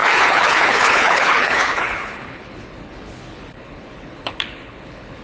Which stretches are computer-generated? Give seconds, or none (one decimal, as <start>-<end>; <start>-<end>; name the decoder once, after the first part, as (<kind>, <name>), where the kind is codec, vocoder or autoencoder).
0.0-5.2 (codec, HILCodec)